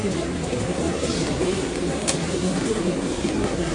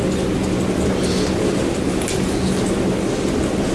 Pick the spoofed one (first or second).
first